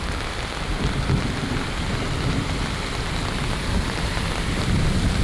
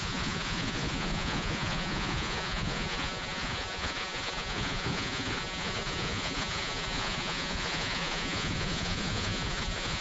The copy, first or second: second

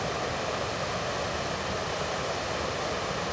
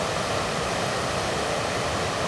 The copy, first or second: second